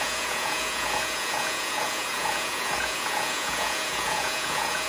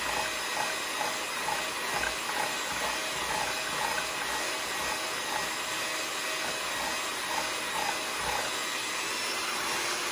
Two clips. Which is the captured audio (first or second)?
second